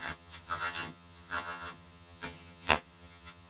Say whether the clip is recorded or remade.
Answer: remade